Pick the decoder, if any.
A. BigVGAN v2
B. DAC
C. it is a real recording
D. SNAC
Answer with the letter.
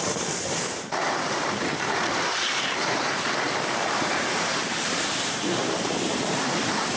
A